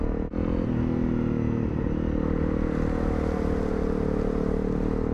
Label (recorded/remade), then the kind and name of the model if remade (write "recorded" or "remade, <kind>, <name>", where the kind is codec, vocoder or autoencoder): recorded